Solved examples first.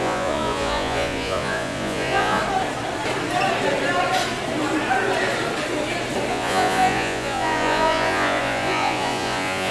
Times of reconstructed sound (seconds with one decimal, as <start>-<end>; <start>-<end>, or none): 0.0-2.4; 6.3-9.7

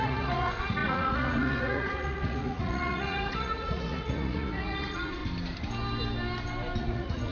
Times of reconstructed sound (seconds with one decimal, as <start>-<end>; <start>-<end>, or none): 0.0-5.2; 6.8-7.3

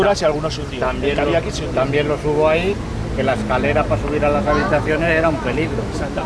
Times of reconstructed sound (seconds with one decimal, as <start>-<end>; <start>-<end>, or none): 4.6-6.3